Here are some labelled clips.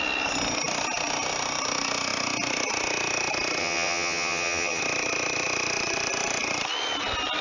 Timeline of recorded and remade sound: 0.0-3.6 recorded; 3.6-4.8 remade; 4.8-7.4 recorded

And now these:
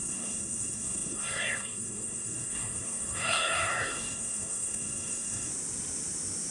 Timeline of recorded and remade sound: 0.0-5.5 remade; 5.5-6.5 recorded

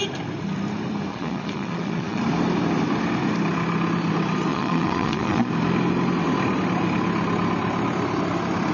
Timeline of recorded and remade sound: 0.0-1.1 recorded; 1.1-2.2 remade; 2.2-4.5 recorded; 4.5-5.5 remade; 5.5-8.7 recorded

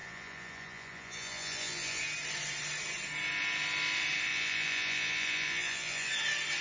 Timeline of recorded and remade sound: 0.0-2.0 remade; 2.0-4.3 recorded; 4.3-6.1 remade; 6.1-6.6 recorded

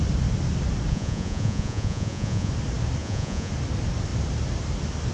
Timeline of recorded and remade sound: 0.0-0.9 recorded; 0.9-2.5 remade; 2.5-3.0 recorded; 3.0-3.5 remade; 3.5-5.1 recorded

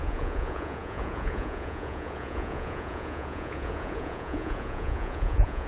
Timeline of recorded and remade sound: 0.0-5.7 remade